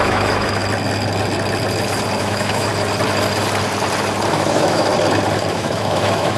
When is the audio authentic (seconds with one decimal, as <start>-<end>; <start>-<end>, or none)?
0.6-2.2; 2.7-4.3; 4.9-5.5